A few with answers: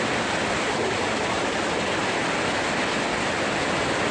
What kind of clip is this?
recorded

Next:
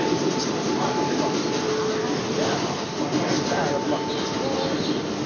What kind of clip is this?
recorded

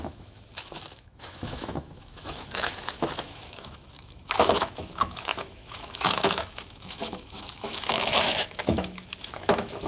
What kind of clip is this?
remade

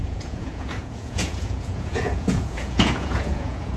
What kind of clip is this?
remade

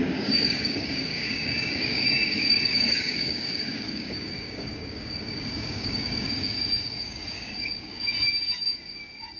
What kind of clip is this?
remade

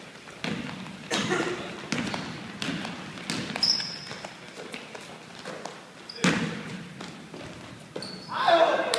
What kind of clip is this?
recorded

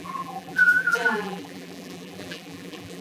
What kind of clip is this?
remade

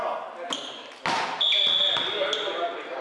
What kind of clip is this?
recorded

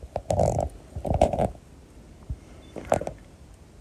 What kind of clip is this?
recorded